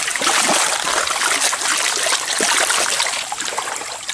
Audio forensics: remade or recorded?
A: recorded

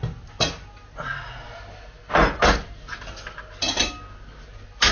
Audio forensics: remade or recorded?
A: recorded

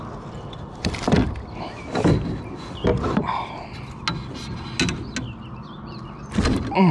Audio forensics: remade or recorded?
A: recorded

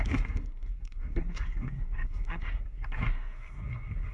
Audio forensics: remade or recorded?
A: remade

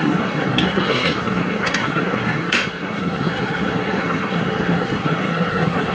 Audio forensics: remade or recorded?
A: remade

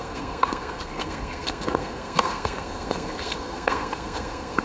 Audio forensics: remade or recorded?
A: remade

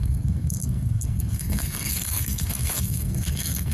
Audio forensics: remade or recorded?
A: remade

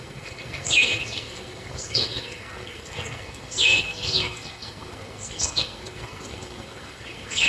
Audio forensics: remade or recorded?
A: remade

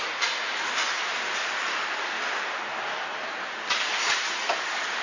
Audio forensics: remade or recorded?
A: recorded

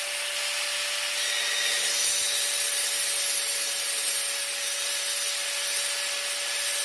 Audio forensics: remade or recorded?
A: recorded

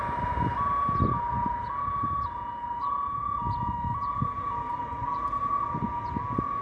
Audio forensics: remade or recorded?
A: recorded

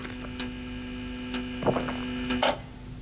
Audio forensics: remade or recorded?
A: recorded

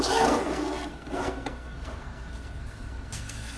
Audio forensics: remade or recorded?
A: remade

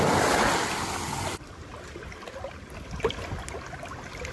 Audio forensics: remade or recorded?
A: recorded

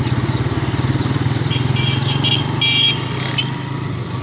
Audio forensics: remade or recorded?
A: recorded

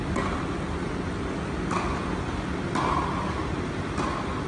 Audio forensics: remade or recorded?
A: recorded